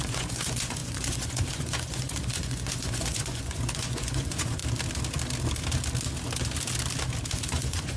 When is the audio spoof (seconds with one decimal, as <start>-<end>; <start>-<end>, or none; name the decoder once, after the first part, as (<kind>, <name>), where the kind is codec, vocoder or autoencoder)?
0.0-4.6 (vocoder, Vocos); 7.3-8.0